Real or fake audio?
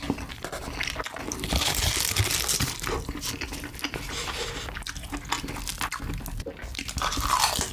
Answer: real